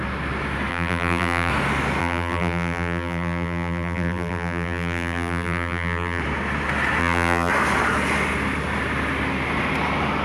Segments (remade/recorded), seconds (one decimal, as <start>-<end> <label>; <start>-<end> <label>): 0.0-0.7 recorded; 0.7-1.5 remade; 1.5-2.0 recorded; 2.0-6.2 remade; 6.2-7.0 recorded; 7.0-7.5 remade; 7.5-10.2 recorded